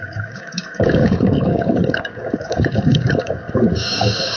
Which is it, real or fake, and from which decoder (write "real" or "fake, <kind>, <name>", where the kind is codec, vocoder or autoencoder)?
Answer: fake, codec, DAC